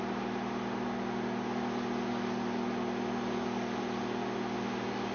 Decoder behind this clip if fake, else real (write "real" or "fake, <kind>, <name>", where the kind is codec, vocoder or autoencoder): real